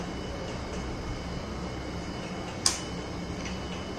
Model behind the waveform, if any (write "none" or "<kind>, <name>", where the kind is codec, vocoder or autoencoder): none